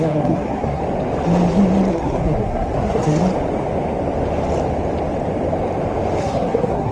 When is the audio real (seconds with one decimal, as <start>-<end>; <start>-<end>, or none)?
0.8-1.9; 3.2-6.2